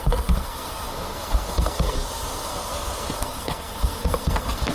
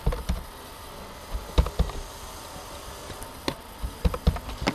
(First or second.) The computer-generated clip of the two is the first